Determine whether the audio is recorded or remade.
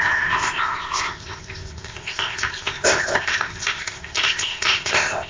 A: remade